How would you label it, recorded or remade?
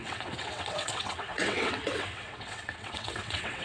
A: remade